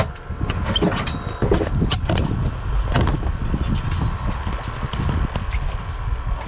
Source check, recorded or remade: recorded